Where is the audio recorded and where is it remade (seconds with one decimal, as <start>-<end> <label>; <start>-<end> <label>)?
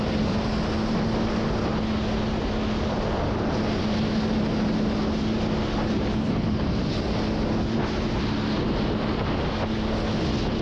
0.0-6.1 recorded; 6.1-6.6 remade; 6.6-10.6 recorded